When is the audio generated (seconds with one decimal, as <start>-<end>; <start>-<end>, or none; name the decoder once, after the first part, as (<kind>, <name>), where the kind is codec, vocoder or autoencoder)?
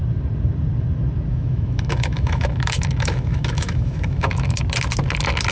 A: 1.3-4.6 (autoencoder, DAC-VAE)